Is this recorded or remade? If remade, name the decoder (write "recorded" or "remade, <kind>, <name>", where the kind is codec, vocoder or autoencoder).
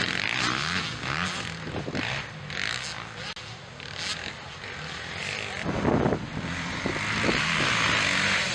recorded